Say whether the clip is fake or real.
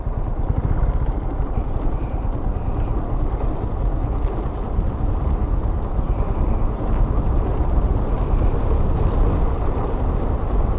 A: real